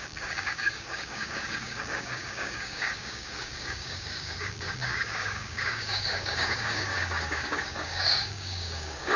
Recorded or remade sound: remade